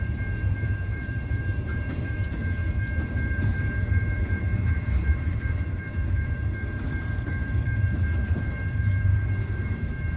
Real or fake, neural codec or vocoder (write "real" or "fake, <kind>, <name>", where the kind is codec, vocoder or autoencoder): fake, vocoder, BigVGAN v2